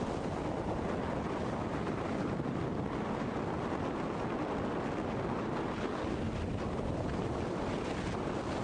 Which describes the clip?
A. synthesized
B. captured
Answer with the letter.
B